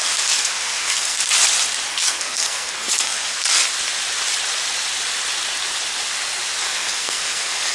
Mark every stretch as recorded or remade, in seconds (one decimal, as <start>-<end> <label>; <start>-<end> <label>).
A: 0.0-1.2 remade; 1.2-1.9 recorded; 1.9-3.6 remade; 3.6-6.6 recorded; 6.6-7.7 remade